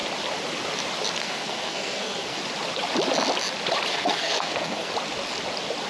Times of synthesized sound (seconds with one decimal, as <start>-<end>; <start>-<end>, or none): 1.2-2.4; 3.9-4.9